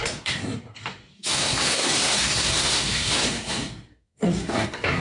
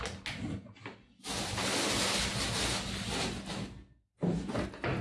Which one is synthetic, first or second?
first